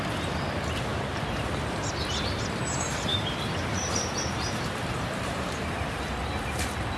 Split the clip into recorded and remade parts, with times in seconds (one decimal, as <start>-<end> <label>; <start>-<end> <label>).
0.0-0.9 recorded; 0.9-2.0 remade; 2.0-3.1 recorded; 3.1-5.6 remade; 5.6-7.0 recorded